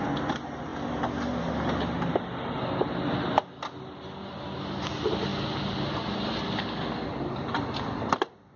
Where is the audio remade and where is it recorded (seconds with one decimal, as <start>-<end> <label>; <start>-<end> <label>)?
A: 0.0-8.6 recorded